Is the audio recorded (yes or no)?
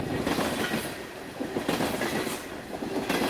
yes